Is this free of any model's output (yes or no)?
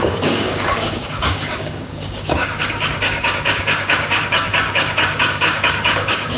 no